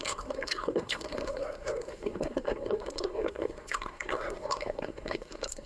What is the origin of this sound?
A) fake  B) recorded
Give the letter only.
A